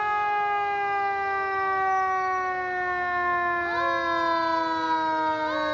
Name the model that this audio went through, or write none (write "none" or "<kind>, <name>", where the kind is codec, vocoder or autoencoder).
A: none